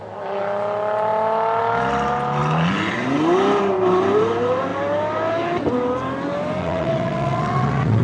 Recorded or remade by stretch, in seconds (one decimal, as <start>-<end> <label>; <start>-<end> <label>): 0.0-6.6 recorded; 6.6-8.0 remade